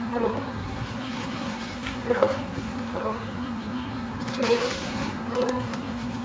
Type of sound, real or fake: fake